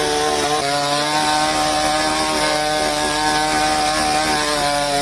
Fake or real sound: real